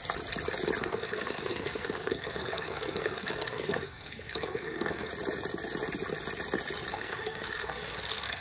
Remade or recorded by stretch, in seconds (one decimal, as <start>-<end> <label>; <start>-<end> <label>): 0.0-0.8 recorded; 0.8-5.1 remade; 5.1-6.9 recorded; 6.9-8.4 remade